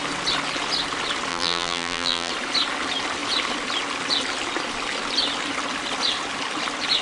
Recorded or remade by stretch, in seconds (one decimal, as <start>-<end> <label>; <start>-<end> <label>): 0.0-1.3 recorded; 1.3-2.3 remade; 2.3-7.0 recorded